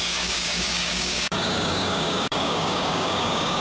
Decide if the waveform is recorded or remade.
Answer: remade